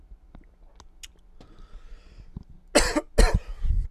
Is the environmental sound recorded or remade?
recorded